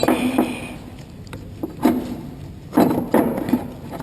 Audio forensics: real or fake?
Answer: real